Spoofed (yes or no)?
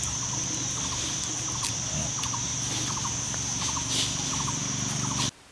no